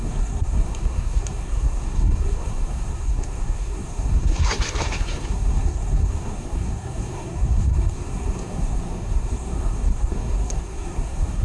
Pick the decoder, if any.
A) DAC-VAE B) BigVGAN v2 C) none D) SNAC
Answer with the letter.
D